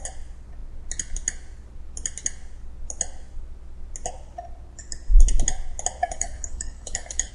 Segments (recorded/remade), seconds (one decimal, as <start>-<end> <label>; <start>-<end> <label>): 0.0-6.0 recorded; 6.0-7.3 remade